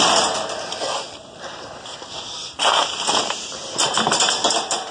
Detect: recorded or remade recorded